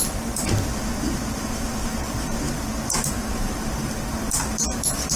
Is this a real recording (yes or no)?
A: no